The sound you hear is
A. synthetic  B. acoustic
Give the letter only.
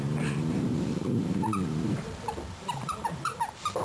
A